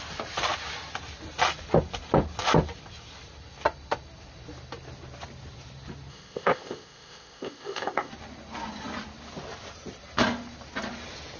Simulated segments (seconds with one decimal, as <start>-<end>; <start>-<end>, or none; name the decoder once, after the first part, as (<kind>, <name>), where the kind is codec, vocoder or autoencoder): 6.1-8.1 (codec, ZipCodec)